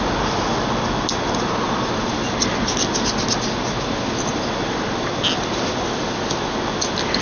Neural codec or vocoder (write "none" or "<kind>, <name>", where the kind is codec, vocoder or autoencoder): none